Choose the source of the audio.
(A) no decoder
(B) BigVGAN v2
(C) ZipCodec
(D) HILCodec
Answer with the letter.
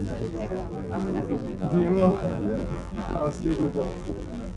B